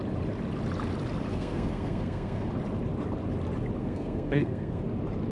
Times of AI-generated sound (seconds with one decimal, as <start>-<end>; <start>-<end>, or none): 1.3-2.5; 3.8-4.8